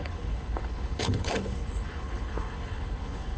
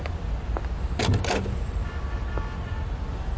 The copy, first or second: first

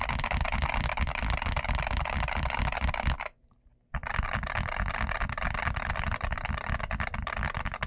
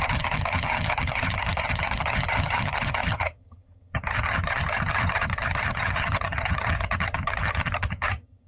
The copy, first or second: second